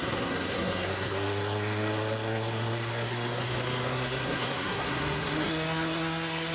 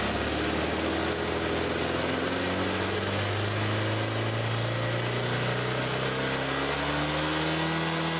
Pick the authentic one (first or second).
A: second